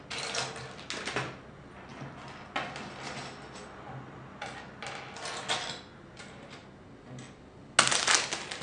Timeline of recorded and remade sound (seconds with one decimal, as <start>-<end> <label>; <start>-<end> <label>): 0.0-8.6 recorded